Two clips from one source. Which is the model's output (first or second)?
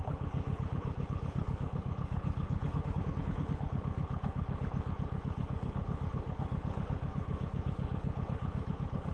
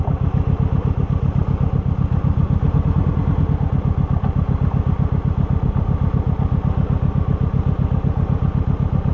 first